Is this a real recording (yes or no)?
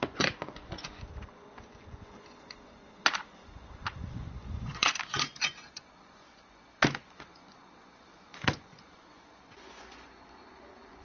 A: no